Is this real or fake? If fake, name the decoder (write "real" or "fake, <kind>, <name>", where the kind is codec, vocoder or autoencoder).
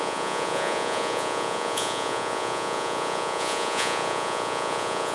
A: fake, vocoder, Vocos